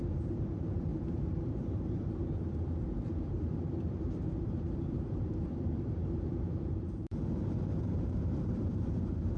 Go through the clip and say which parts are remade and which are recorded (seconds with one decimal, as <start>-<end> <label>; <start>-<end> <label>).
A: 0.0-9.4 remade